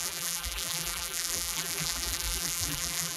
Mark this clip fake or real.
fake